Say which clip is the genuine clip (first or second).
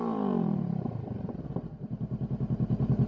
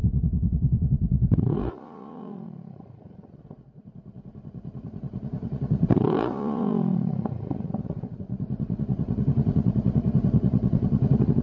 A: first